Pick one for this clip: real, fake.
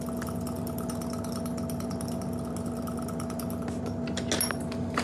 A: real